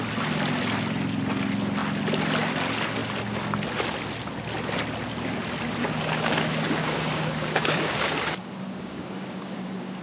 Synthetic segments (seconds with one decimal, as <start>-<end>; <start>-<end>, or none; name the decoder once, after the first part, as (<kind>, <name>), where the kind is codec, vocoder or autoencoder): 5.8-10.0 (codec, DAC)

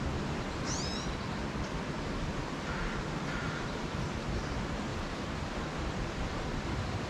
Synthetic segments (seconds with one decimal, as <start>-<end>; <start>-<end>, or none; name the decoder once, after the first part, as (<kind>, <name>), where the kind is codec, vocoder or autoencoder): 0.0-0.9 (vocoder, BigVGAN v2); 2.2-7.1

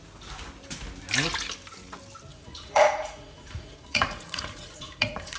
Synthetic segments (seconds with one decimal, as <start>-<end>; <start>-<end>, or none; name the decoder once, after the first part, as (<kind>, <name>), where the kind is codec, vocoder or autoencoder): 2.3-5.4 (vocoder, Vocos)

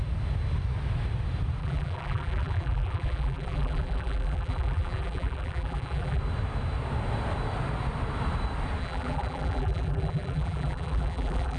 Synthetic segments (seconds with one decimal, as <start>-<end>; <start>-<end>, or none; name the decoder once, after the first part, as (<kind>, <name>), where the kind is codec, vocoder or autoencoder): 1.6-6.2 (vocoder, BigVGAN v2); 8.8-11.6

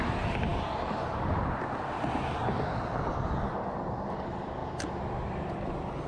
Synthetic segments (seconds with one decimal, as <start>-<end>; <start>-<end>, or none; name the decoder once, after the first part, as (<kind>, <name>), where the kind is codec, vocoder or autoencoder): 0.5-1.3 (vocoder, BigVGAN v2); 2.4-3.1; 4.6-6.1

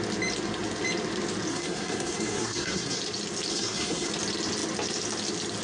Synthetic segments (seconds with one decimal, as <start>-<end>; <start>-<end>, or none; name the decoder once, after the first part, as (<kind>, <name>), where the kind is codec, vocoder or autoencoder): 1.5-3.0 (codec, SNAC); 3.5-4.1

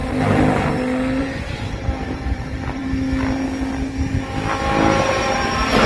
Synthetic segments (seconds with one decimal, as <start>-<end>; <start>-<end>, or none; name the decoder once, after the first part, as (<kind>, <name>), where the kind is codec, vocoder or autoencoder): 1.2-2.8 (vocoder, BigVGAN v2); 5.0-5.9

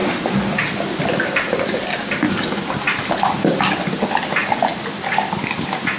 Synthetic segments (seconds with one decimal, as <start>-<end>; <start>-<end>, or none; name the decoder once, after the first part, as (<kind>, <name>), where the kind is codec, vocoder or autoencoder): none